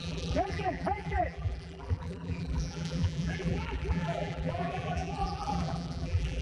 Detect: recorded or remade remade